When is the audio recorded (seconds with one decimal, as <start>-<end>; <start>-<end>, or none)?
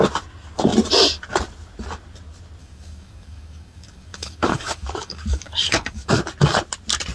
0.0-2.6; 6.2-7.1